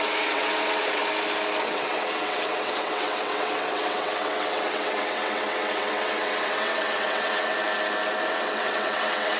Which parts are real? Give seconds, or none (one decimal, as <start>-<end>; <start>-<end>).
1.0-1.6; 7.5-8.3